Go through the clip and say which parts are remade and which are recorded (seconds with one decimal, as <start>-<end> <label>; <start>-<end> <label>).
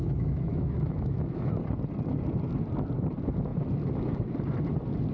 0.0-1.5 remade; 1.5-5.1 recorded